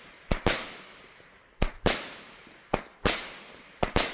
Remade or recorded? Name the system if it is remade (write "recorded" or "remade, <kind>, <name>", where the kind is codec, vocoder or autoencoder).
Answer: recorded